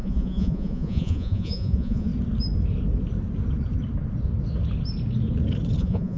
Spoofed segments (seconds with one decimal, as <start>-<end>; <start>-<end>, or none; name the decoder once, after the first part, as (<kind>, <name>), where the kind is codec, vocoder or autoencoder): 0.0-2.1 (vocoder, Vocos); 5.8-6.2